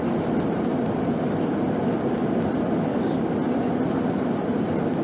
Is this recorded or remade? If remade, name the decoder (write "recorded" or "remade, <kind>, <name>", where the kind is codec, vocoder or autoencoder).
remade, vocoder, BigVGAN v2